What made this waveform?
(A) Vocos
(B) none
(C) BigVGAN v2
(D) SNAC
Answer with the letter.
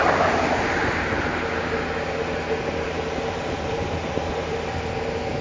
C